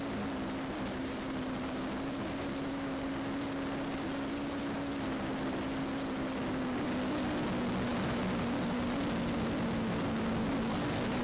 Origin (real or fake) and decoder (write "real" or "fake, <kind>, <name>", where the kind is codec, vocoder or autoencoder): real